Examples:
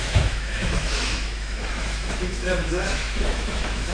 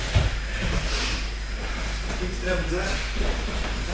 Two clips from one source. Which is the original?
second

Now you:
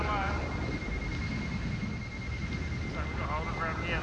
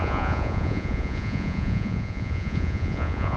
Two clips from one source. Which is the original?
first